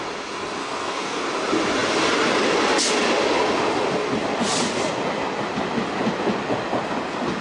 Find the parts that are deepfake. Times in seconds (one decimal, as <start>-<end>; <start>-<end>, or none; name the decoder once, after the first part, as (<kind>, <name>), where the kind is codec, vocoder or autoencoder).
0.6-1.2 (codec, SNAC)